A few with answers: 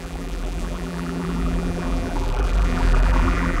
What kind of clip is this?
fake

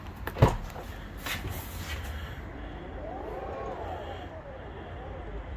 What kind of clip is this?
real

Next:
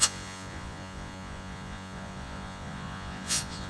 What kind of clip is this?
fake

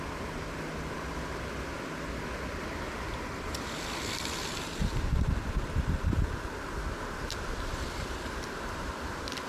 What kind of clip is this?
real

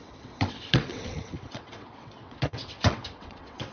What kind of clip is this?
fake